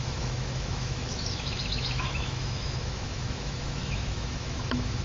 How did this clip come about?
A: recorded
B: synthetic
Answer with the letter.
B